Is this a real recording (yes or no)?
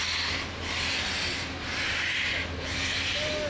yes